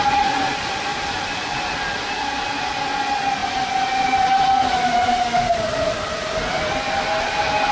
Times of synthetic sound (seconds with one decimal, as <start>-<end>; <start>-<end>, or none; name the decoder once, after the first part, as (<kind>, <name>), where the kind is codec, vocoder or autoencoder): 0.9-2.1 (vocoder, BigVGAN v2)